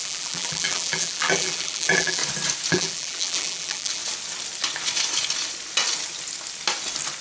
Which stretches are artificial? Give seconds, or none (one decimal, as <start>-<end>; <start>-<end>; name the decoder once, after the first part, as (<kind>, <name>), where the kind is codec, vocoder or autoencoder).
0.0-2.2 (vocoder, BigVGAN v2); 2.7-4.0